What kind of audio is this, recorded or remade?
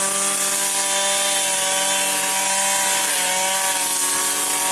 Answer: recorded